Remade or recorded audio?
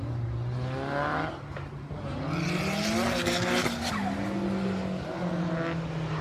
recorded